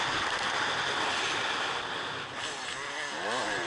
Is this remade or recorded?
recorded